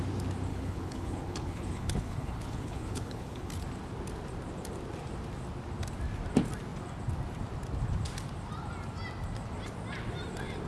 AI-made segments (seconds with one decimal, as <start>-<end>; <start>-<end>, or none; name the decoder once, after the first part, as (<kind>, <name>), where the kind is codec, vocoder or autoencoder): 0.5-3.5 (codec, HILCodec)